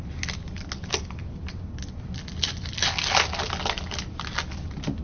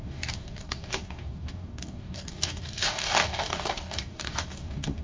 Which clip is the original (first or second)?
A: first